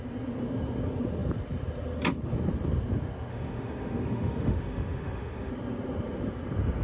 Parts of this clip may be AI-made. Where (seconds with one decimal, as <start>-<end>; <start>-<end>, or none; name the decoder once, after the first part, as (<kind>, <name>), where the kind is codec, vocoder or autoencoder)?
3.3-5.5 (autoencoder, DAC-VAE)